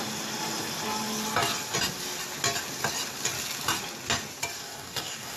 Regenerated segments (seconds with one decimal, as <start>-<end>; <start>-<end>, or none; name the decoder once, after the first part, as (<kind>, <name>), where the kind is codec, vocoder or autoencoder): 4.6-5.4 (codec, DAC)